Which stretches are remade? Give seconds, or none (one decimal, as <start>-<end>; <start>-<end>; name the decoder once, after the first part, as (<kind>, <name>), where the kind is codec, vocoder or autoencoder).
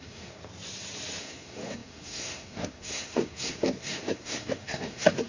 0.0-0.4 (codec, SNAC); 1.2-5.3